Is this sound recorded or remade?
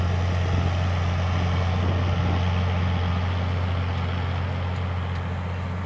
recorded